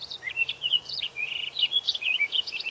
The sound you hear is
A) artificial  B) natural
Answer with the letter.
A